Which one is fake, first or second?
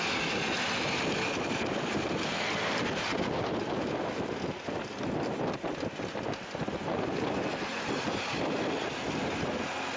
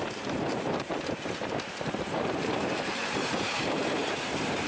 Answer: second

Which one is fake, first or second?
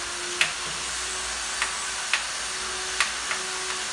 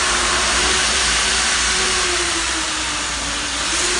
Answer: second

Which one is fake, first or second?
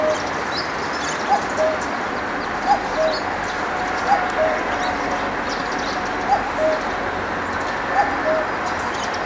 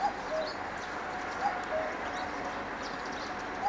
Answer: second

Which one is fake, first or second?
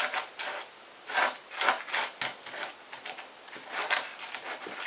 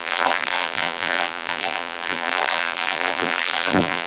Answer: second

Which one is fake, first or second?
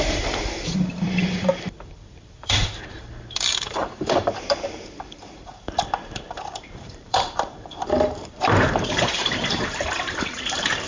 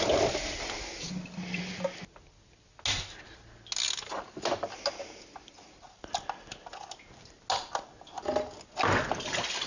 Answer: first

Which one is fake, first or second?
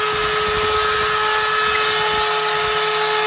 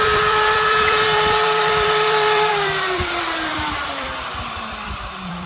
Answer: second